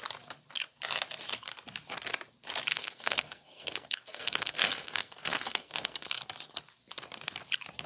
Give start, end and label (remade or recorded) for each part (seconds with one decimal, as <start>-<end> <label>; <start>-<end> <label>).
0.0-2.7 recorded; 2.7-6.2 remade; 6.2-7.9 recorded

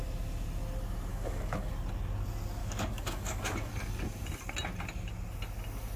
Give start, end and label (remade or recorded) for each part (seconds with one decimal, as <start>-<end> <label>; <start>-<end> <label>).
0.0-1.1 recorded; 1.1-1.7 remade; 1.7-2.6 recorded; 2.6-3.7 remade; 3.7-6.0 recorded

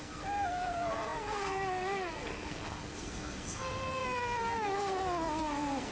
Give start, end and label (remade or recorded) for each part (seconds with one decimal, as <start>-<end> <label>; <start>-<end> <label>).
0.0-5.9 remade

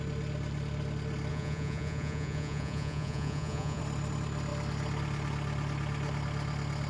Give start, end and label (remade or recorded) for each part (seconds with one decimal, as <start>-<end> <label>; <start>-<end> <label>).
0.0-1.3 recorded; 1.3-3.8 remade; 3.8-6.9 recorded

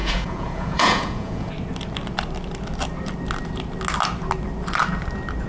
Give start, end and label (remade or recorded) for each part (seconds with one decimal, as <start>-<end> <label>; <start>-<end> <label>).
0.0-1.5 remade; 1.5-5.5 recorded

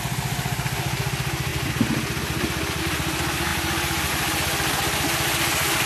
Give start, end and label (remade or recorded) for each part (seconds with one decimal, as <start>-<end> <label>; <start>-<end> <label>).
0.0-5.9 recorded